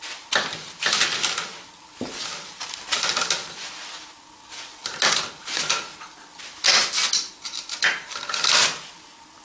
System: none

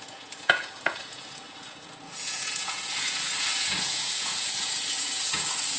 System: vocoder, Vocos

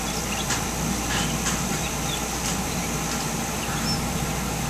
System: none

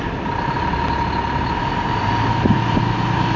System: none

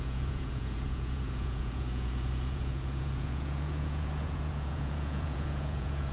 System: vocoder, Vocos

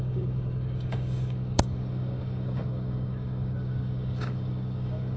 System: codec, DAC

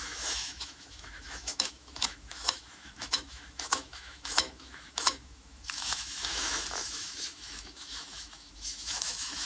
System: autoencoder, DAC-VAE